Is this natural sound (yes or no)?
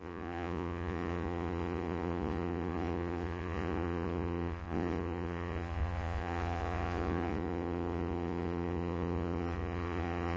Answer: no